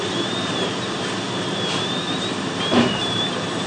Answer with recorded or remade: remade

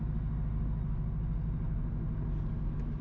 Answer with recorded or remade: recorded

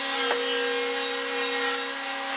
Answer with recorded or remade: recorded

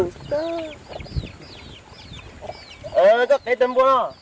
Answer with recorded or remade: recorded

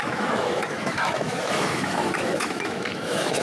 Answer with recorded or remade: remade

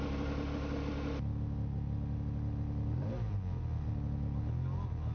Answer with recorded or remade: recorded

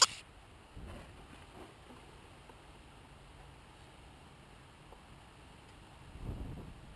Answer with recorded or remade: recorded